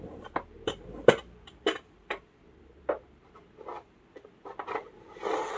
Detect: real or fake fake